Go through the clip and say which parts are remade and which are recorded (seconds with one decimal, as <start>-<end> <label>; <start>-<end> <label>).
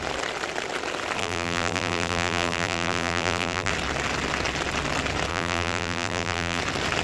0.0-1.2 recorded; 1.2-3.7 remade; 3.7-5.3 recorded; 5.3-6.6 remade; 6.6-7.0 recorded